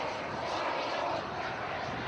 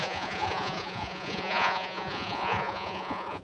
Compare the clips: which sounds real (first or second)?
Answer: first